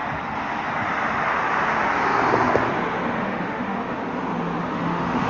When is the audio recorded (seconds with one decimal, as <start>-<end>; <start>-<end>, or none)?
0.0-3.2; 4.0-4.6